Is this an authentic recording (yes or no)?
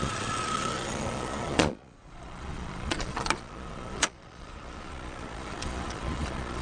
no